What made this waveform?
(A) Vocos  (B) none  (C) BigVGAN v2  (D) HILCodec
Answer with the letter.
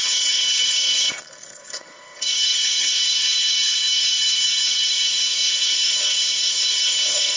D